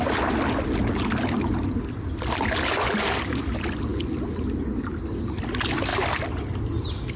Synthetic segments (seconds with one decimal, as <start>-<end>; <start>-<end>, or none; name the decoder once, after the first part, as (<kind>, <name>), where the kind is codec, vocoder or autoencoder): none

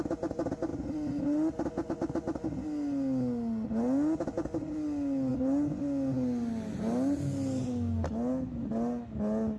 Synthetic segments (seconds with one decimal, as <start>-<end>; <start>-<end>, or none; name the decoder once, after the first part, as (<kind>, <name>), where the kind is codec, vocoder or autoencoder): none